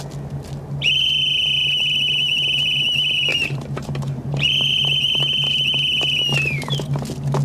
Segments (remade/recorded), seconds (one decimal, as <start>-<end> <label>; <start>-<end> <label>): 0.0-3.3 recorded; 3.3-4.5 remade; 4.5-7.4 recorded